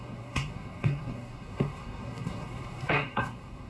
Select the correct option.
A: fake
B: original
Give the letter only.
A